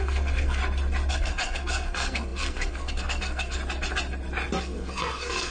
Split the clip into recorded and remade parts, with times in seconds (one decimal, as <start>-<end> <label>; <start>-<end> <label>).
0.0-0.6 remade; 0.6-1.1 recorded; 1.1-3.6 remade; 3.6-4.6 recorded; 4.6-5.5 remade